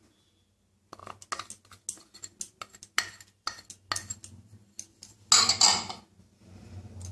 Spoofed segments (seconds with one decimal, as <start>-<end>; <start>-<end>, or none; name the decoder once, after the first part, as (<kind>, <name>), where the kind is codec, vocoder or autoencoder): none